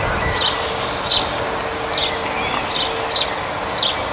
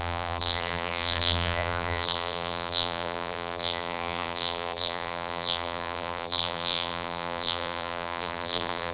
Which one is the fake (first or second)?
second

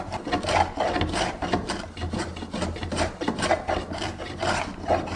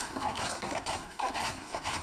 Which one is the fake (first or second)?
second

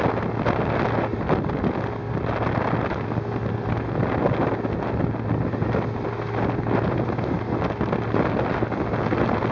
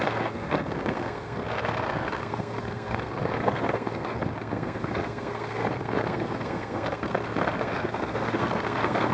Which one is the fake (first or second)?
second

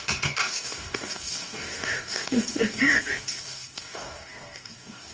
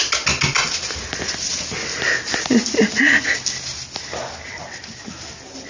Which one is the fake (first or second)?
first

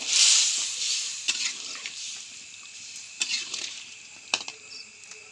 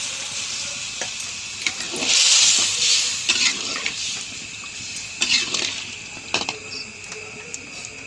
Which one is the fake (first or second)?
first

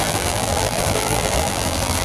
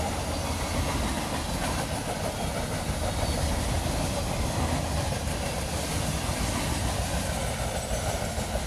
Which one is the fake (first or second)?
first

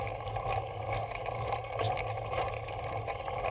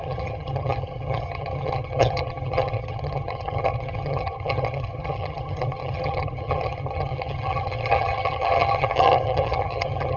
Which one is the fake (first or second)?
second